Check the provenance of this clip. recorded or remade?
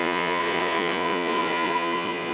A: remade